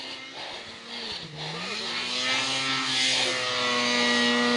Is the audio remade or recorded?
recorded